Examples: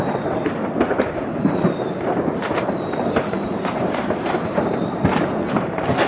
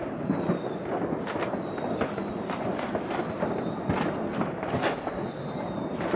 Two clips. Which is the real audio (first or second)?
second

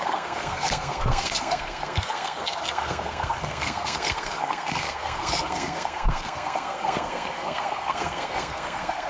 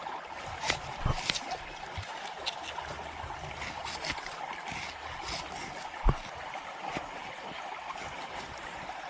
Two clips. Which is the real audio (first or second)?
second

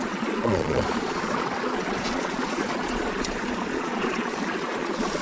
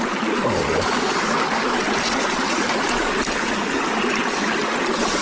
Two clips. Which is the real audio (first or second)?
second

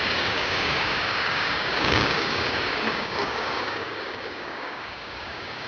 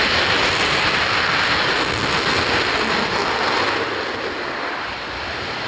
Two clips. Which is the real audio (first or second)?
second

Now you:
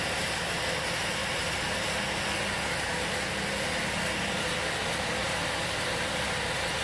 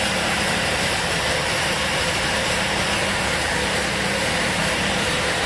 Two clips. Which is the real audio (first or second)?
first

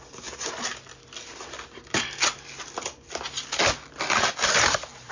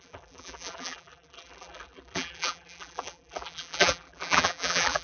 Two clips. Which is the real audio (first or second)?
first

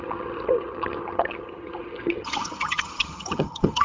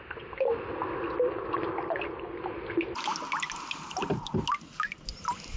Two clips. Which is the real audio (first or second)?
second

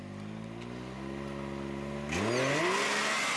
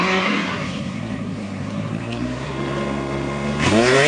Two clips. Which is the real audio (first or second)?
first